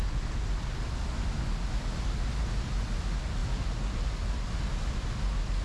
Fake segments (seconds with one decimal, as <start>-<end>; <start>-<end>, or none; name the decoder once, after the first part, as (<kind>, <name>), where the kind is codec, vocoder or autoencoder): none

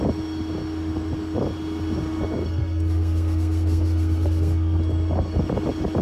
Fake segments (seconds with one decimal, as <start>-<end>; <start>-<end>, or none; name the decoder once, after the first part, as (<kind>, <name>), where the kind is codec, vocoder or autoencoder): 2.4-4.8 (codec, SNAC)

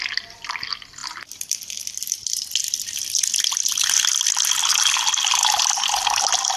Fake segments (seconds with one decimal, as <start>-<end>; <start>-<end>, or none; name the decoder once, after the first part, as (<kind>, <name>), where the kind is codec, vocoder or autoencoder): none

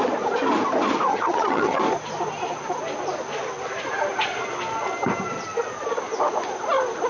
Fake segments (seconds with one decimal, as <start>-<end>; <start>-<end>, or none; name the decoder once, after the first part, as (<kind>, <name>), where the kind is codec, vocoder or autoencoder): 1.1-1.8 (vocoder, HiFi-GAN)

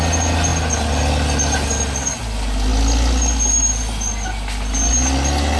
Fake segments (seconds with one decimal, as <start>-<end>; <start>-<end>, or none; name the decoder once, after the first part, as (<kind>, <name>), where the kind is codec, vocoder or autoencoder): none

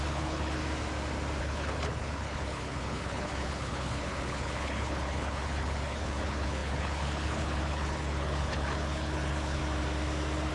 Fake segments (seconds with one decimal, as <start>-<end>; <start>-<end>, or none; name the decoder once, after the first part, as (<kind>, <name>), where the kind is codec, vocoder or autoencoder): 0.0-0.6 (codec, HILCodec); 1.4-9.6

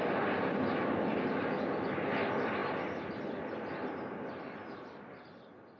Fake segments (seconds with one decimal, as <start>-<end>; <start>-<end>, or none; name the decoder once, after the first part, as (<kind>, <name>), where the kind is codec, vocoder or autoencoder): none